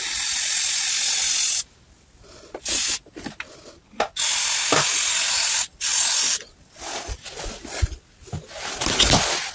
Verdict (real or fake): real